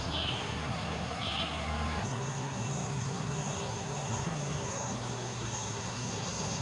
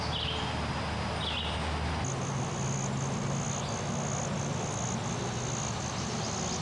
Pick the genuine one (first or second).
second